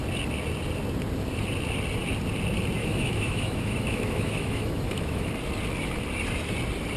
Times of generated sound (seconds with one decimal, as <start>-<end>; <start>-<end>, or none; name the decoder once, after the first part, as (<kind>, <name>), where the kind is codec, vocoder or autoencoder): 2.8-5.3 (autoencoder, DAC-VAE)